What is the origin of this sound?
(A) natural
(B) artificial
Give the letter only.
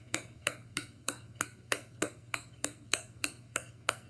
B